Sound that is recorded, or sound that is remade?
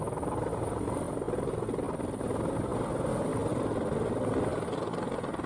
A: recorded